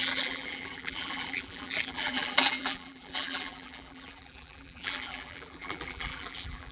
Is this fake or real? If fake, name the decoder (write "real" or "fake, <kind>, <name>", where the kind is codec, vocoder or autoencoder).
fake, vocoder, BigVGAN v2